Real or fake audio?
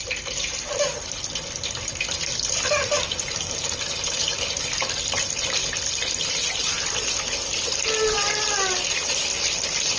real